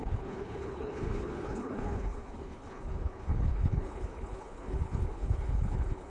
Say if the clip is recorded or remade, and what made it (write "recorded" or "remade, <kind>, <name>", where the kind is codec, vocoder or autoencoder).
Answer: remade, codec, HILCodec